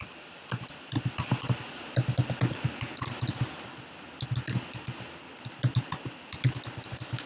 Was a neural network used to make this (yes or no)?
no